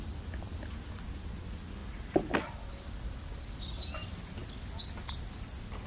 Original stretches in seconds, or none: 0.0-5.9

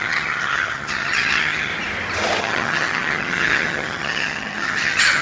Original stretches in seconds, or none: 1.7-2.4

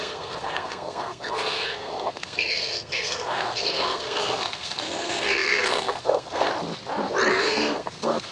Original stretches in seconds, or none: 6.5-7.3

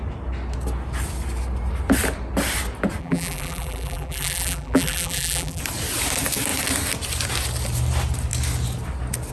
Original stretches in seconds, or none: 0.0-3.0; 5.6-9.3

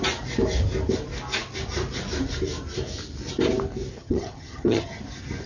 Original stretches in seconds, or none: 0.0-4.0; 5.0-5.5

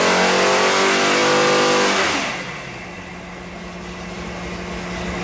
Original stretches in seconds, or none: 0.0-5.2

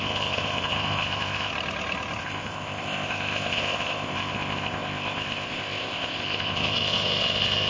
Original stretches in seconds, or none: 1.5-2.2

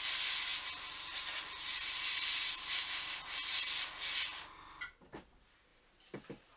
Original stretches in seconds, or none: 0.0-0.5; 3.9-5.7